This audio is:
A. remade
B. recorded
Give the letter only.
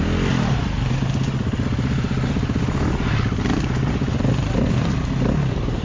B